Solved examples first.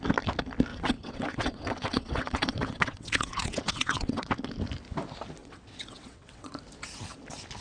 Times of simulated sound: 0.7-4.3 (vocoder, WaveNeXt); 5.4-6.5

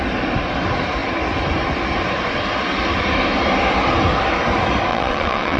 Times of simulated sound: 4.9-5.6 (vocoder, WaveNeXt)